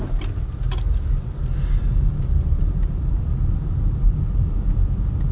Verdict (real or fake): real